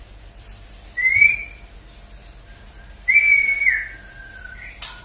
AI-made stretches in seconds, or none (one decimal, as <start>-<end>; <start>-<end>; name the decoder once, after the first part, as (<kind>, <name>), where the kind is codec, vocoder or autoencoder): 0.0-1.4 (vocoder, BigVGAN v2); 4.3-5.0